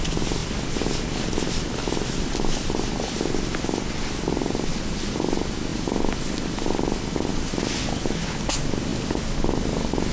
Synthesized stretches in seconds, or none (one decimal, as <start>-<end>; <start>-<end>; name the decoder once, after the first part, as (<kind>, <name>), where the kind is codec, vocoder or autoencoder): none